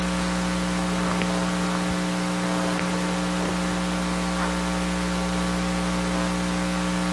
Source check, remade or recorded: recorded